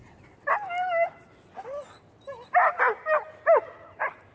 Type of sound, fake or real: real